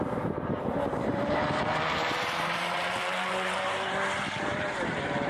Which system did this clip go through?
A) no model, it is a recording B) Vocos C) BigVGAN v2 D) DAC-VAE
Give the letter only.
C